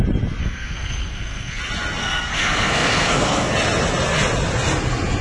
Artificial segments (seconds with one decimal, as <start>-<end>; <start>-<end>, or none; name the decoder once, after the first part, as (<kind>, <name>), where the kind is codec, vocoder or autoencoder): 0.4-1.6 (codec, SNAC); 2.0-3.5